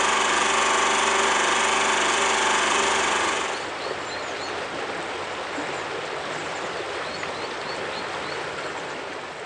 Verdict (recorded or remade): recorded